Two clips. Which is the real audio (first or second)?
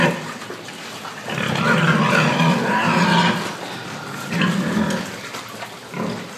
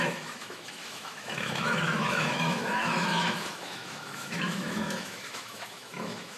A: first